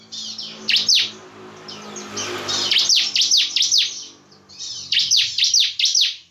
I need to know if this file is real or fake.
real